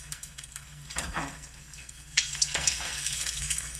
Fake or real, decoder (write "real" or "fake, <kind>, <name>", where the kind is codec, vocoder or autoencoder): fake, codec, SNAC